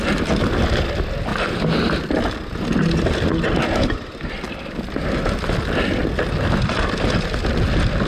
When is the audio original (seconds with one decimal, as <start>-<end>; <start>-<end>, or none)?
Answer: 1.3-3.8